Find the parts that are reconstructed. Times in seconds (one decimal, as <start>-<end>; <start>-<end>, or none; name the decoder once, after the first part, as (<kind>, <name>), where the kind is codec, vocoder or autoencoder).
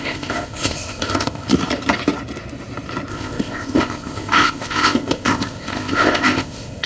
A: 0.0-1.5 (codec, ZipCodec); 3.1-6.9